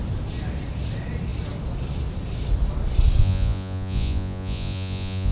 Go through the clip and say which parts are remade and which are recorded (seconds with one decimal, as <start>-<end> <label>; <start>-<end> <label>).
0.0-3.2 recorded; 3.2-5.3 remade